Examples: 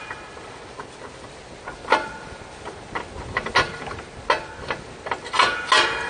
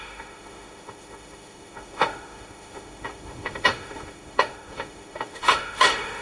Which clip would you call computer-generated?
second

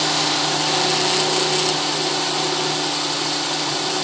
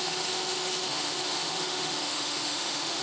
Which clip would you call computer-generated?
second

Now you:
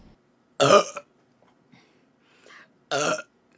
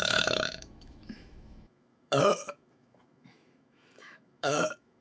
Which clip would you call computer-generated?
second